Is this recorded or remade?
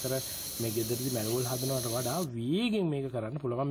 recorded